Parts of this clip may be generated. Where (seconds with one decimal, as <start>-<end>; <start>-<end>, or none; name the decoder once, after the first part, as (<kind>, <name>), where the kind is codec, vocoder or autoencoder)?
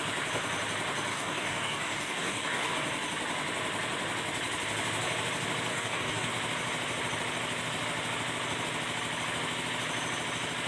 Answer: 1.1-2.7 (codec, DAC); 5.7-6.3